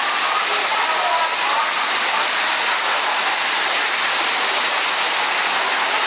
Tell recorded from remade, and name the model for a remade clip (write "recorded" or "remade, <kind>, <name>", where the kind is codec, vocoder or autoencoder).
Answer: recorded